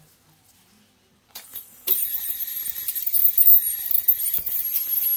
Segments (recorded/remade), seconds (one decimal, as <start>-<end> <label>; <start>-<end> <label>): 0.0-1.1 recorded; 1.1-2.4 remade; 2.4-5.2 recorded